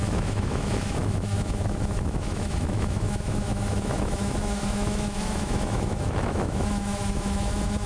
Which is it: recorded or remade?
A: remade